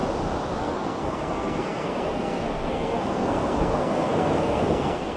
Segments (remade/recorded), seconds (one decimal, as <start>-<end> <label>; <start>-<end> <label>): 0.0-0.6 recorded; 0.6-5.2 remade